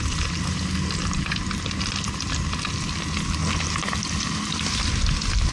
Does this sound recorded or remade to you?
recorded